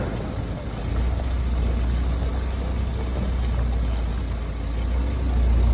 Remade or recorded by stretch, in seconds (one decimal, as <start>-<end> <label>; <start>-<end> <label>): 0.0-5.7 recorded